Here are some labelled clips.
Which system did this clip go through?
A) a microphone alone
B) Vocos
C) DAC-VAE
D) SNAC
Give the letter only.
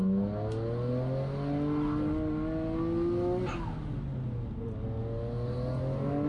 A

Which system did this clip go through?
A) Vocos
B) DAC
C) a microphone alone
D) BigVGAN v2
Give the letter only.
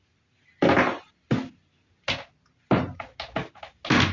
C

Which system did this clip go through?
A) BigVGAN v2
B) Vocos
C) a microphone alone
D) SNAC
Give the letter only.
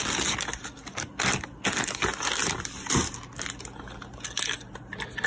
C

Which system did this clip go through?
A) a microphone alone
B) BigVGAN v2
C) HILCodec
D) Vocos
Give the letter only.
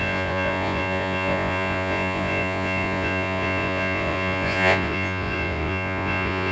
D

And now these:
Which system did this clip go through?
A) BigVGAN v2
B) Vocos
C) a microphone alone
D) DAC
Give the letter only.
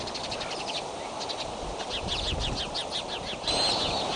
C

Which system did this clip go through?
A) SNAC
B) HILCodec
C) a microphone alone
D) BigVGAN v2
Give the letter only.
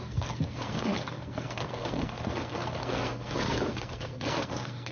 A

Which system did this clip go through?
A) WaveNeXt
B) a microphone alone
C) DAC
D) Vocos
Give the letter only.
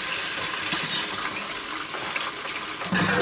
B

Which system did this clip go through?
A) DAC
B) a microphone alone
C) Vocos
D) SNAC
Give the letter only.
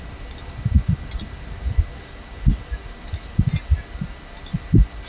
B